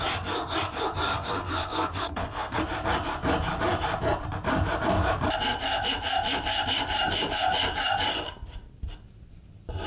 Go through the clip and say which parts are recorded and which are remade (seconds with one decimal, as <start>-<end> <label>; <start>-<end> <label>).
0.0-1.1 recorded; 1.1-2.6 remade; 2.6-9.9 recorded